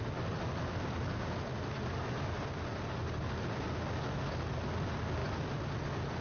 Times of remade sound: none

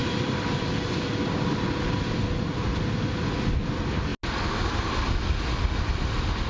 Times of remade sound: 0.0-0.6

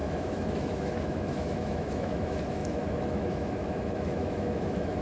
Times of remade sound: 0.0-5.0

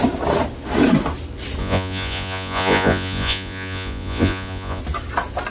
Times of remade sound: 1.6-4.8

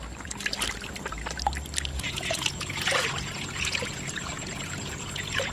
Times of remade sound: 1.9-5.5

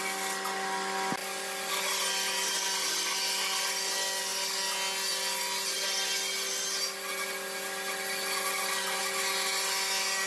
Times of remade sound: none